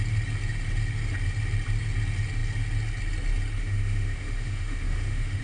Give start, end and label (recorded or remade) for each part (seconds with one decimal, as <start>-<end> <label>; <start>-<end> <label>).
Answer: 0.0-3.6 recorded; 3.6-5.4 remade